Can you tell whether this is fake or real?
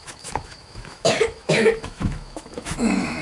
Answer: fake